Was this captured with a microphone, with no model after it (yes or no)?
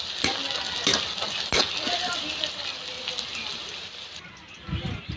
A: yes